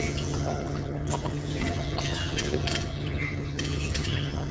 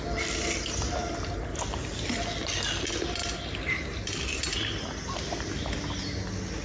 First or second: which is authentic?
second